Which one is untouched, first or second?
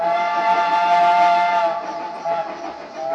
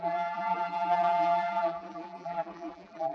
first